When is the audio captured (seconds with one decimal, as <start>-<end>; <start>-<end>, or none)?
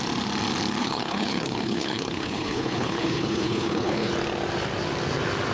0.0-0.8; 4.1-5.5